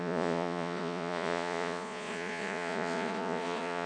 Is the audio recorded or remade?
remade